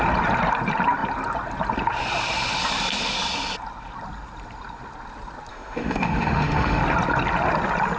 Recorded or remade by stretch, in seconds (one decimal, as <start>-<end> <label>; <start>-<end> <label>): 0.0-5.5 recorded; 5.5-6.8 remade; 6.8-8.0 recorded